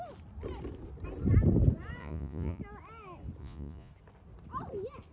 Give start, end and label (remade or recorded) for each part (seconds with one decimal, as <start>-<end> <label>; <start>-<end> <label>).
0.0-2.0 recorded; 2.0-2.6 remade; 2.6-3.4 recorded; 3.4-3.9 remade; 3.9-5.1 recorded